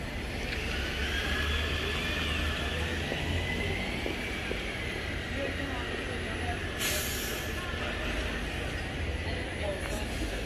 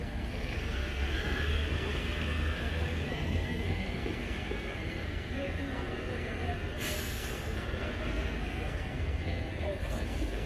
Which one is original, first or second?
first